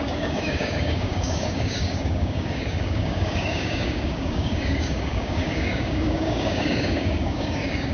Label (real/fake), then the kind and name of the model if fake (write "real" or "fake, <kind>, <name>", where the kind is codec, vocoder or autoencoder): fake, codec, DAC